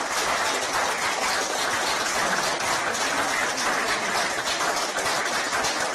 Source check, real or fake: real